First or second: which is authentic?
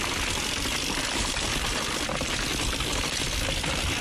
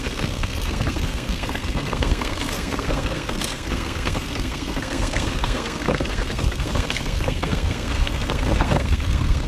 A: first